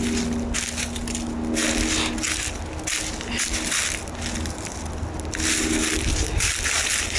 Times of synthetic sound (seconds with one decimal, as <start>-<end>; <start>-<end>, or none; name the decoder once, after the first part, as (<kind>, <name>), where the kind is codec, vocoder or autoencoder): none